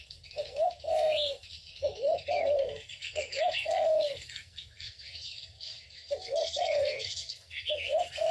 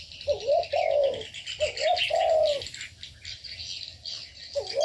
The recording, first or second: second